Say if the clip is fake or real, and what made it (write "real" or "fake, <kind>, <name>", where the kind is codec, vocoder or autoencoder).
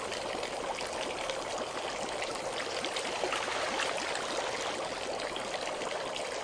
real